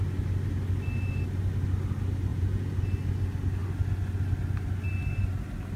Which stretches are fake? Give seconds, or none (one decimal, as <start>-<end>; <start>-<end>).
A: 2.3-2.8

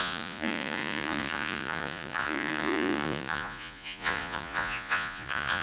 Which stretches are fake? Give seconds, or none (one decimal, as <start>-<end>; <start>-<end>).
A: 0.0-5.6

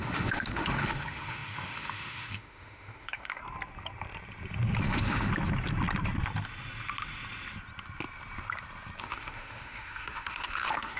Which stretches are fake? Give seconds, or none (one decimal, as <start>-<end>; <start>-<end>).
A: 0.0-3.4; 4.8-5.3; 9.0-11.0

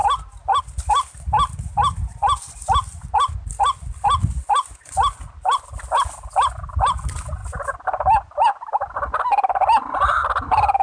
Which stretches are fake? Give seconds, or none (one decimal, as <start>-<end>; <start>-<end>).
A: none

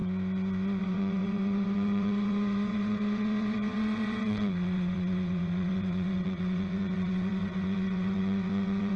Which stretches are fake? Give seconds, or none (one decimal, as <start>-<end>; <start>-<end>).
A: 0.8-9.0

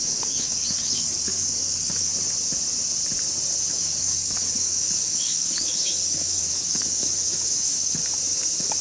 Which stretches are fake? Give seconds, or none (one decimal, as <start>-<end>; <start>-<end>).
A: 0.0-2.1; 3.6-8.0

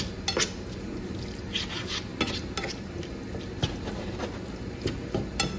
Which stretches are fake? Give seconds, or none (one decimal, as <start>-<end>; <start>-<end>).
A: none

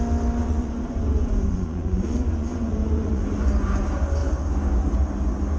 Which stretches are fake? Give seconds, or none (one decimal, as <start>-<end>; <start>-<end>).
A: 0.4-3.8